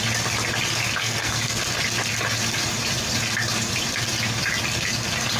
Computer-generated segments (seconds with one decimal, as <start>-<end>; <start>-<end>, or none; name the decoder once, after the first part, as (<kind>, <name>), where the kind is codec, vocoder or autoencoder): 1.0-1.6 (codec, SNAC)